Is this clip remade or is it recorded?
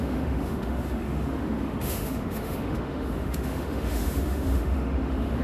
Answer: remade